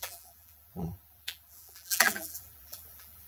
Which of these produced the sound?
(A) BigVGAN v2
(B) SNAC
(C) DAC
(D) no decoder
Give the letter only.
A